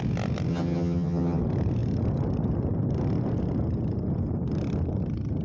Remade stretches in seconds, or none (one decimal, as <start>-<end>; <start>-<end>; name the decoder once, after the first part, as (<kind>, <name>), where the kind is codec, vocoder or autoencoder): 0.5-1.4 (vocoder, HiFi-GAN)